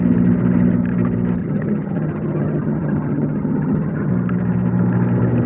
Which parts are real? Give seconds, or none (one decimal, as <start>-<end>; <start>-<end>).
0.0-1.4; 4.1-5.5